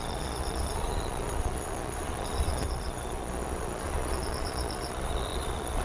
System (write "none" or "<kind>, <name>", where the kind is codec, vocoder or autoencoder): vocoder, Vocos